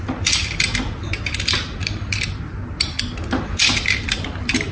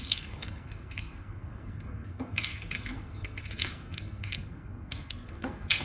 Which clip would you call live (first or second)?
first